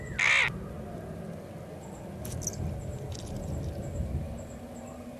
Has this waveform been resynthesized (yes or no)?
no